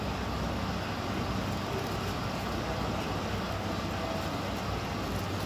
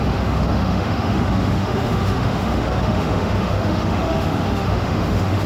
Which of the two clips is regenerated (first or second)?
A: second